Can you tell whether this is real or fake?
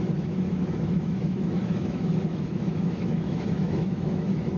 fake